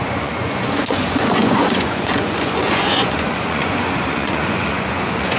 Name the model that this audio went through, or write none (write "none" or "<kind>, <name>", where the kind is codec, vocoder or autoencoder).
vocoder, Vocos